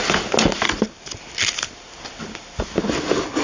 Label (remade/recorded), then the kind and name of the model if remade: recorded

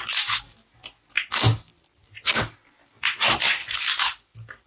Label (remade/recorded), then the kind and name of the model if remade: recorded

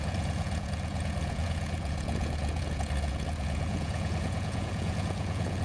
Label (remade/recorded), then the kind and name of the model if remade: remade, vocoder, Vocos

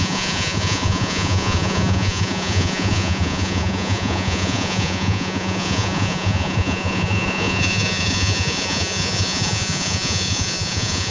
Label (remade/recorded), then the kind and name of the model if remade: remade, vocoder, Vocos